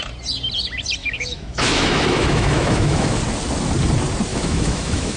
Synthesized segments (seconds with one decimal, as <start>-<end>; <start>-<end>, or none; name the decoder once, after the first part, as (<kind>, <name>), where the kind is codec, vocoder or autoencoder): 1.0-3.2 (autoencoder, DAC-VAE); 4.3-5.2